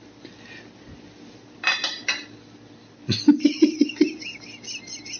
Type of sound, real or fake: real